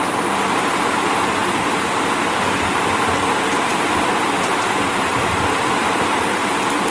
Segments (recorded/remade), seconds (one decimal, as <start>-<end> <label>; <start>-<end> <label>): 0.0-6.9 recorded